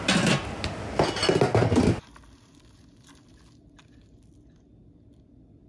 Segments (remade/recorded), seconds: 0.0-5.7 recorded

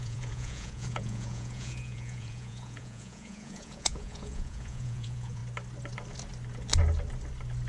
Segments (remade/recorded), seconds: 0.0-5.4 remade; 5.4-7.7 recorded